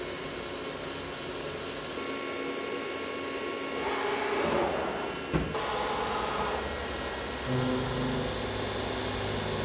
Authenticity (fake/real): real